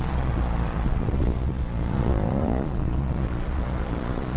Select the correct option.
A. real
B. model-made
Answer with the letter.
B